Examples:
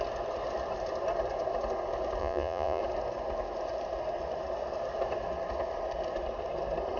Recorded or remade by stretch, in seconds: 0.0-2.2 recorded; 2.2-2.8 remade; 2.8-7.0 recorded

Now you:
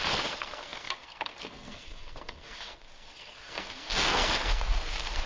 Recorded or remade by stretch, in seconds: 0.0-5.3 remade

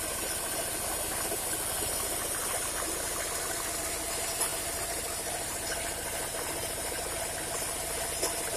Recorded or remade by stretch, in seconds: 0.0-4.5 recorded; 4.5-7.2 remade; 7.2-8.6 recorded

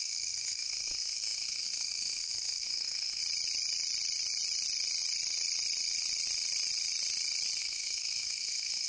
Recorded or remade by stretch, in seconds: 0.0-3.2 remade; 3.2-7.6 recorded; 7.6-8.9 remade

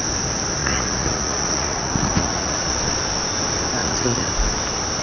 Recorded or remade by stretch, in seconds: 0.0-0.6 recorded; 0.6-2.8 remade; 2.8-3.8 recorded; 3.8-4.3 remade; 4.3-5.0 recorded

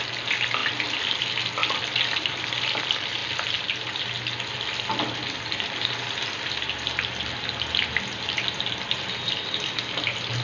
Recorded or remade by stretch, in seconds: 0.0-1.6 recorded; 1.6-2.8 remade; 2.8-3.2 recorded; 3.2-4.0 remade; 4.0-10.4 recorded

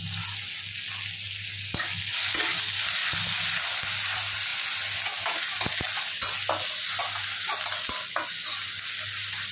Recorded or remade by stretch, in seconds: 0.0-9.5 recorded